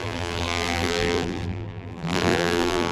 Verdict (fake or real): fake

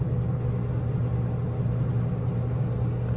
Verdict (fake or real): real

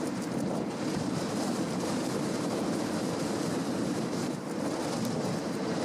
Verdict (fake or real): fake